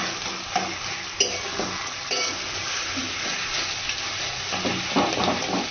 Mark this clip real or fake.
real